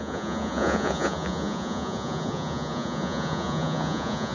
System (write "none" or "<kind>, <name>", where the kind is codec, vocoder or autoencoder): vocoder, Vocos